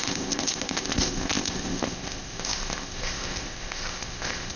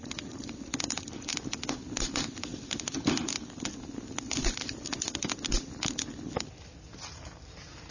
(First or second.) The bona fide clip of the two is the second